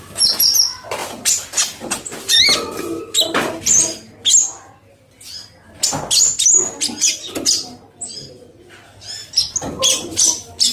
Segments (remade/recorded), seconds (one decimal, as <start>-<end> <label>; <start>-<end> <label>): 0.0-1.0 recorded; 1.0-3.0 remade; 3.0-10.7 recorded